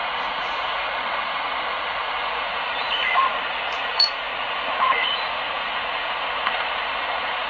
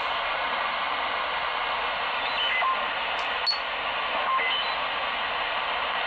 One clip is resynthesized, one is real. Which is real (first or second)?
second